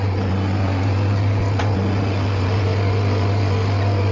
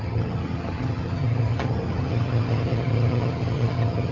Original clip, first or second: first